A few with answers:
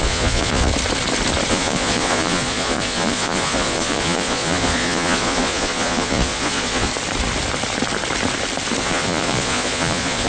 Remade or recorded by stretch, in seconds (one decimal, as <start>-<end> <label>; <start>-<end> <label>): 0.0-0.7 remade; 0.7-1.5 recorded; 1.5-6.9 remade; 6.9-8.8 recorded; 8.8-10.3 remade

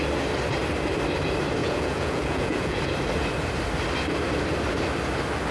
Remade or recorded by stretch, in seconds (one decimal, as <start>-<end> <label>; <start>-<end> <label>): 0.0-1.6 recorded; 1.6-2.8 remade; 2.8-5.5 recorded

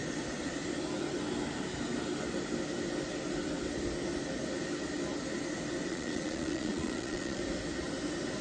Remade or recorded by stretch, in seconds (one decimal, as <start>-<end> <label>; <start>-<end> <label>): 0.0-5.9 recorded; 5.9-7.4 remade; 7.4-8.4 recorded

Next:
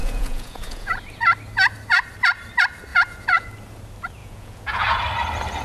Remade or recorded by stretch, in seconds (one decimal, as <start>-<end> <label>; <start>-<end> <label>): 0.0-0.9 remade; 0.9-2.9 recorded; 2.9-3.5 remade; 3.5-4.2 recorded; 4.2-5.0 remade; 5.0-5.6 recorded

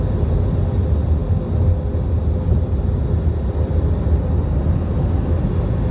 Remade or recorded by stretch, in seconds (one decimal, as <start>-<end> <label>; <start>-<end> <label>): 0.0-5.9 recorded